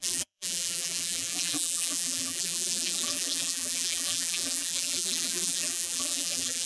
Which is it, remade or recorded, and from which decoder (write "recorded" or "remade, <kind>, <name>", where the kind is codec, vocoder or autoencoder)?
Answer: remade, vocoder, BigVGAN v2